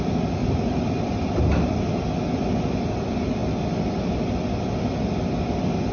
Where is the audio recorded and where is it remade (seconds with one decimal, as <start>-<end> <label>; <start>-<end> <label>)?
0.0-0.4 recorded; 0.4-2.0 remade; 2.0-5.9 recorded